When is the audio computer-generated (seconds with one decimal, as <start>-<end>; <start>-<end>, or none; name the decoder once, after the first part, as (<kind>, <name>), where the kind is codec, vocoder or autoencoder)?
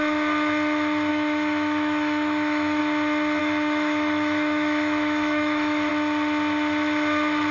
1.1-2.8 (autoencoder, DAC-VAE); 3.4-5.9